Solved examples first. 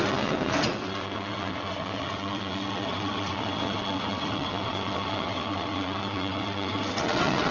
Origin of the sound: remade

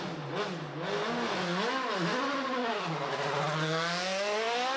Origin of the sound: recorded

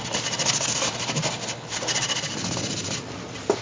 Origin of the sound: recorded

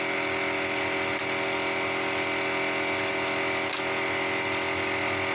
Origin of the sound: recorded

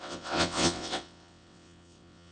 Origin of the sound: remade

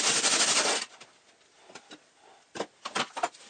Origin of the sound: recorded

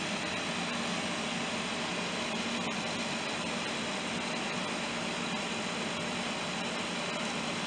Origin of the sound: recorded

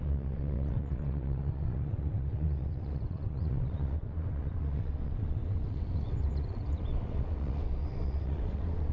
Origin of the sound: remade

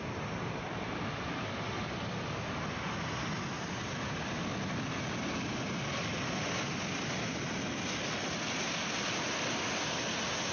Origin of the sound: recorded